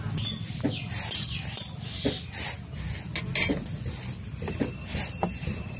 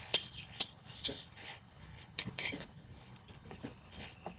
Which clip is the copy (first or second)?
second